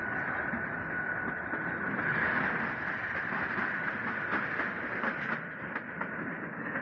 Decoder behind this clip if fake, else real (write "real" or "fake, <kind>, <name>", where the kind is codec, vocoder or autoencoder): real